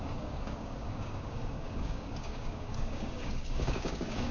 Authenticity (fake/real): fake